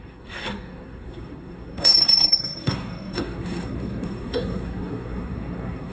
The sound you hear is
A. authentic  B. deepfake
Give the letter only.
B